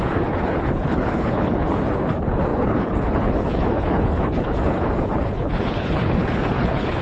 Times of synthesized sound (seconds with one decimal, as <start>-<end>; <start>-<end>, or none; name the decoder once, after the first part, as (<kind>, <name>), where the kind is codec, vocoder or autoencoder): 0.0-7.0 (codec, HILCodec)